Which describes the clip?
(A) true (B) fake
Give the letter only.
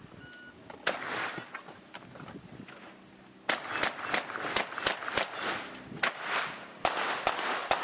A